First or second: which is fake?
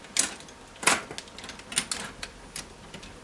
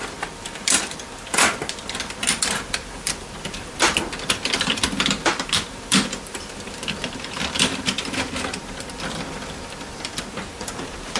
second